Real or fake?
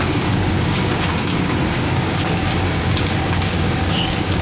fake